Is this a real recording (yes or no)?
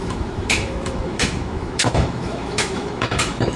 no